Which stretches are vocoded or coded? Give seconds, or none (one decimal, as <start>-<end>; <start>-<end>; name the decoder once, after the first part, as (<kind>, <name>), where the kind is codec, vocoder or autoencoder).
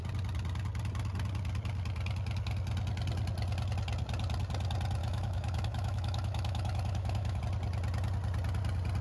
5.0-7.4 (autoencoder, DAC-VAE)